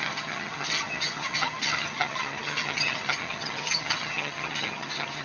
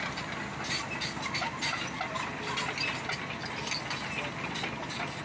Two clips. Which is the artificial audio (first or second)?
first